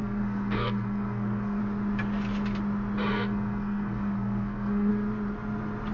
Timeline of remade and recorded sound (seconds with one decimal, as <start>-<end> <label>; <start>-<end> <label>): 0.0-1.6 remade; 1.6-3.1 recorded; 3.1-4.9 remade; 4.9-5.9 recorded